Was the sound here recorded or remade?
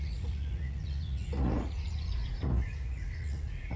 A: remade